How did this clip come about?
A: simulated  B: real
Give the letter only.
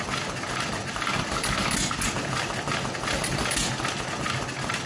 B